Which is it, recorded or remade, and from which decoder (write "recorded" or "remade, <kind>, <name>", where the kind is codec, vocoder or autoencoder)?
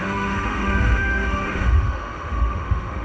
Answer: remade, autoencoder, DAC-VAE